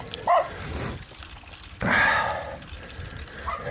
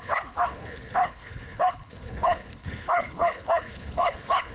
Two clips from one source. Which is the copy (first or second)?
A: second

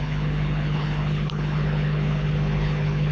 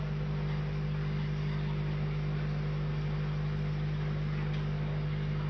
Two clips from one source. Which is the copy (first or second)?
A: first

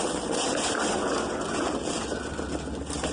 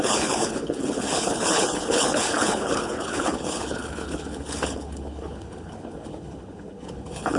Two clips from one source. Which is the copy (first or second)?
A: second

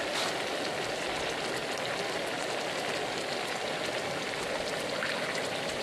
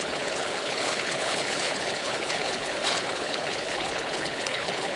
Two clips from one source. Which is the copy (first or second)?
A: second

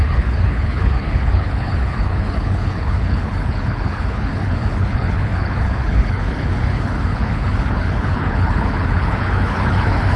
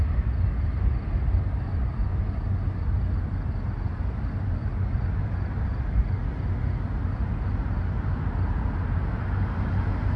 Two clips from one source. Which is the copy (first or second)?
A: first